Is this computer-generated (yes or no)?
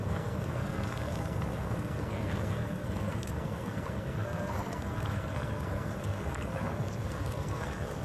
yes